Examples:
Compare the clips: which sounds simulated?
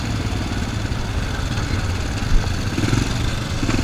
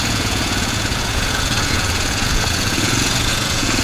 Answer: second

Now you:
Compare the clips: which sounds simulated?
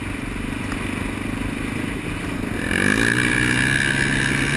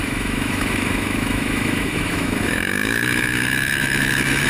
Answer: second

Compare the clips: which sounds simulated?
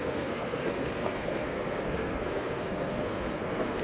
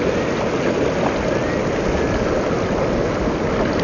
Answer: first